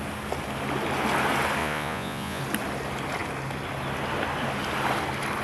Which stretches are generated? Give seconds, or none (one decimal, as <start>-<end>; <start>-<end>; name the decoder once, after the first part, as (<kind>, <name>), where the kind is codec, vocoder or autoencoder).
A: 1.6-2.4 (vocoder, Vocos)